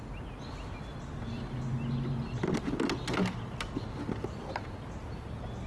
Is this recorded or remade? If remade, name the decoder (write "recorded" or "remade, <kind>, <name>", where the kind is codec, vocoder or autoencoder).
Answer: recorded